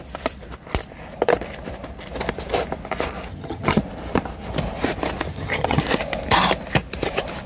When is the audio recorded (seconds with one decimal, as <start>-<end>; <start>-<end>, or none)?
0.0-3.3; 3.8-5.3; 5.8-7.5